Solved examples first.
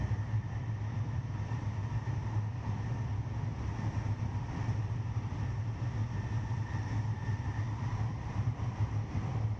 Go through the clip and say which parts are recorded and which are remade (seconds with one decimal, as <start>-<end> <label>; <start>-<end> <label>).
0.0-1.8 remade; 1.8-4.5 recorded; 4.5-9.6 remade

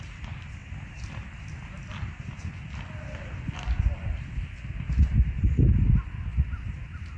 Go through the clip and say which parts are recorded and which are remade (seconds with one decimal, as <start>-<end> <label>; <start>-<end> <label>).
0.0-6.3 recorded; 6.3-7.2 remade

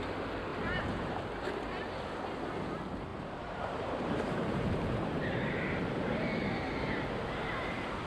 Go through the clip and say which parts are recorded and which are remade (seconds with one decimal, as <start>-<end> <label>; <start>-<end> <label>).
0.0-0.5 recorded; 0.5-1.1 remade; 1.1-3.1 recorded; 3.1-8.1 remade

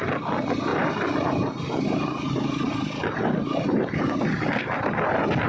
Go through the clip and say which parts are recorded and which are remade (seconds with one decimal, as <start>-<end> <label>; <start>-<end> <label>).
0.0-0.7 recorded; 0.7-4.0 remade; 4.0-5.5 recorded

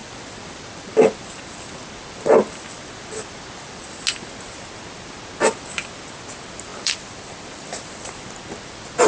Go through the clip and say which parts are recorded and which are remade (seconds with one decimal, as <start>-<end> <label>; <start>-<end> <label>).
0.0-4.0 remade; 4.0-6.7 recorded; 6.7-8.1 remade; 8.1-9.1 recorded

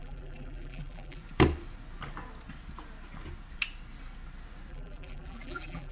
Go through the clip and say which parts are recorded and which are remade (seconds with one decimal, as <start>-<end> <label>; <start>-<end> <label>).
0.0-1.2 remade; 1.2-4.7 recorded; 4.7-5.9 remade

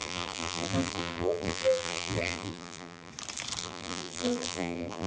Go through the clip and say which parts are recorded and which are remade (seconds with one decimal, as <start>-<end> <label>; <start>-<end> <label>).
0.0-3.1 remade; 3.1-3.6 recorded; 3.6-5.1 remade